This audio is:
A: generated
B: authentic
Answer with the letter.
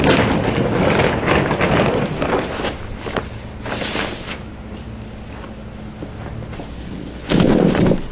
B